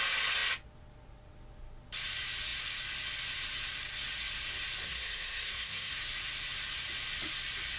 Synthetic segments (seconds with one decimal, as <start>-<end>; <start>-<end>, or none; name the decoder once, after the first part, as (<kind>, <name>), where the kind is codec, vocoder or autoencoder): 4.8-5.9 (codec, SNAC)